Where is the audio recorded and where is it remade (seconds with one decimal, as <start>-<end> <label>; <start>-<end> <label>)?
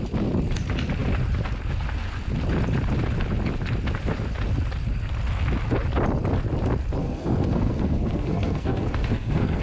0.0-7.0 recorded; 7.0-9.6 remade